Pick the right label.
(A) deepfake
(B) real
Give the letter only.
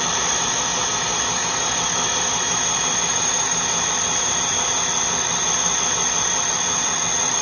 B